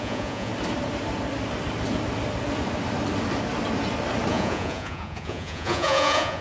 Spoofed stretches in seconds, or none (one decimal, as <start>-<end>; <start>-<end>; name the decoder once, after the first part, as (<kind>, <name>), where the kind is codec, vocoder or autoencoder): 0.0-0.5 (vocoder, Vocos); 4.3-6.4